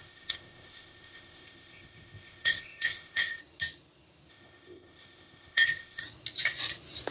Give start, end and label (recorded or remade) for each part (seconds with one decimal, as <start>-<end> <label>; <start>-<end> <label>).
0.0-3.4 remade; 3.4-4.3 recorded; 4.3-6.0 remade; 6.0-7.1 recorded